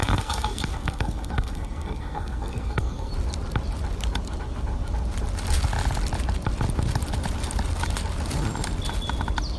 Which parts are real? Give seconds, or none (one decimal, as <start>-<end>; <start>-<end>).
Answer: 3.1-9.6